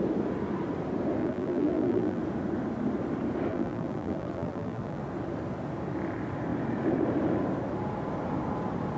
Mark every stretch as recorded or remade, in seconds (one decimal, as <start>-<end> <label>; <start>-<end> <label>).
0.0-1.2 recorded; 1.2-2.2 remade; 2.2-3.5 recorded; 3.5-5.0 remade; 5.0-9.0 recorded